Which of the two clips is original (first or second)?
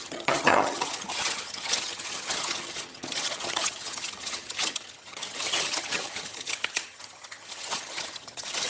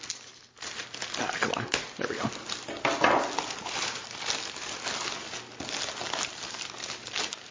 second